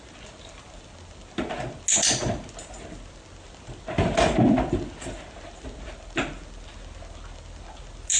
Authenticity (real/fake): real